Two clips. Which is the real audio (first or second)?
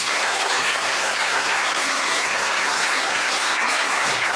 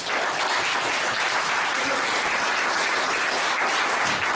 second